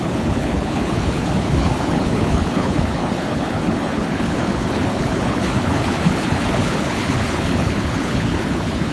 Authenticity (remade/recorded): remade